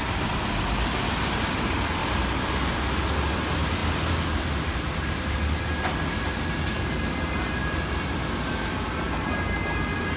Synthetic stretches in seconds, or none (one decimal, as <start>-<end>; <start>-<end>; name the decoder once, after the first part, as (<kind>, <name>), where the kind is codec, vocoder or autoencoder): none

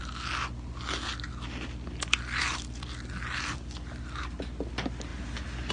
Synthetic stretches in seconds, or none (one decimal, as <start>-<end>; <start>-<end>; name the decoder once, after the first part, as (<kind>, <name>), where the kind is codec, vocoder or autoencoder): none

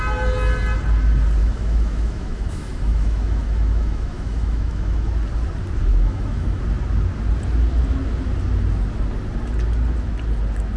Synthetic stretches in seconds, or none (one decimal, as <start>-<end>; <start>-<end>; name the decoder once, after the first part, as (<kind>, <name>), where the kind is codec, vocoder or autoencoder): 1.4-5.1 (autoencoder, DAC-VAE); 5.9-6.6

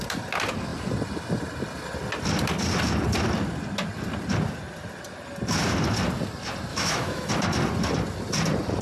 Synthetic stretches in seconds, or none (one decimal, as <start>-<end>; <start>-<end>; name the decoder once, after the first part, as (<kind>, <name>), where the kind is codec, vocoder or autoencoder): 6.7-7.3 (autoencoder, DAC-VAE)

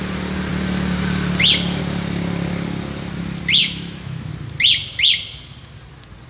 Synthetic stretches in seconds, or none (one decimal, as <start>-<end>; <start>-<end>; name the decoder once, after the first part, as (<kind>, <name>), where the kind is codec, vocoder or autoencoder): 3.6-4.3 (autoencoder, DAC-VAE)

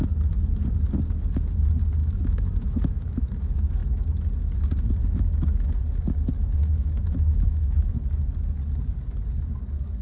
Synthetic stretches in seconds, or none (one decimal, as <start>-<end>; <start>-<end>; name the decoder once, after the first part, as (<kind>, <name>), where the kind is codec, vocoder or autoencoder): 2.0-3.4 (autoencoder, DAC-VAE); 6.6-7.9

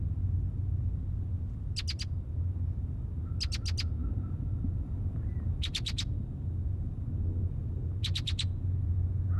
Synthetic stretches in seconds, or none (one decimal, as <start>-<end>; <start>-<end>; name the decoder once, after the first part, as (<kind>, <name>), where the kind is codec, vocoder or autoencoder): none

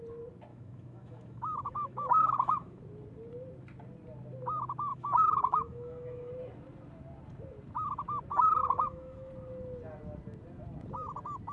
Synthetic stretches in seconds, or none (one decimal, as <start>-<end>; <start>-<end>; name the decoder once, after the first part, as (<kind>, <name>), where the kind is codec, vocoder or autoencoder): 0.5-2.8 (autoencoder, DAC-VAE); 4.9-6.3; 8.6-9.3